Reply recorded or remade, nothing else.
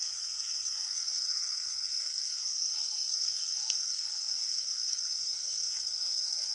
remade